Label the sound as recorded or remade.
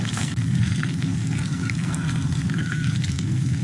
remade